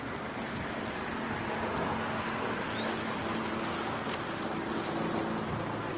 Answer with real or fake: real